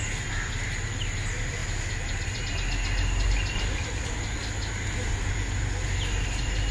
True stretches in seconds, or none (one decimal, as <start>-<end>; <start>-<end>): 0.0-6.7